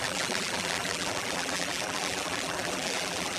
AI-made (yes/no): yes